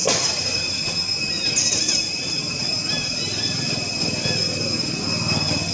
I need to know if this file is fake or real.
real